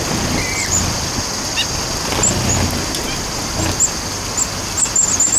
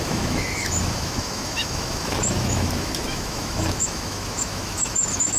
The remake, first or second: second